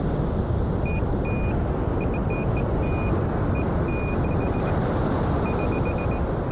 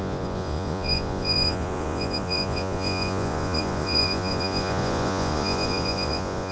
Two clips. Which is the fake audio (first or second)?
second